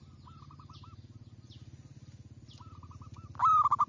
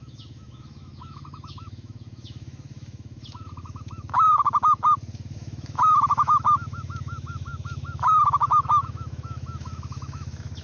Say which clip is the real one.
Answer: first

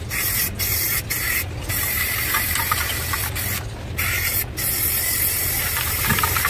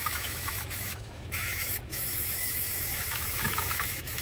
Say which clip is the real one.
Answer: first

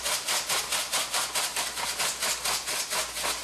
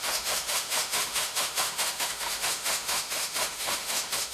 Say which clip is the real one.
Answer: first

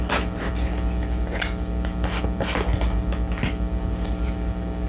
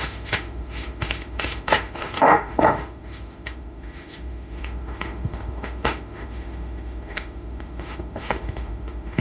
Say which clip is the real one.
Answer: first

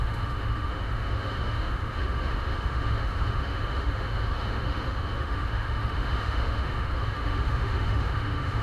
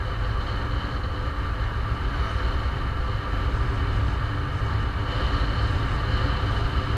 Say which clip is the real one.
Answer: second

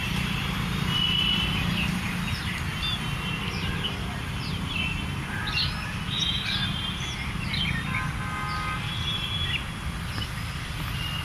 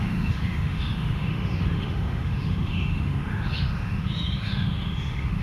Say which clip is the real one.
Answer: first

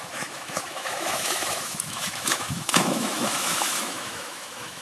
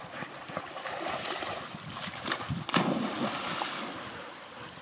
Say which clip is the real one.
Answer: second